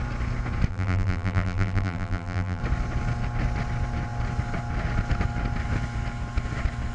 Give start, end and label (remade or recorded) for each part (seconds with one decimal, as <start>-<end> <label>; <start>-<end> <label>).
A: 0.0-0.7 recorded; 0.7-2.6 remade; 2.6-6.9 recorded